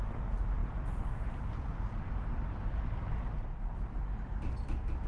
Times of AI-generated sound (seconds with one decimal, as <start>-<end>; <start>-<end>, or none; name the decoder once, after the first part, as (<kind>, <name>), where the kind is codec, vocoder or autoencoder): none